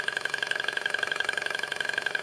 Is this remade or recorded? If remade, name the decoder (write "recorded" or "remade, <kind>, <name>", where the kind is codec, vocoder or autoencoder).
remade, autoencoder, DAC-VAE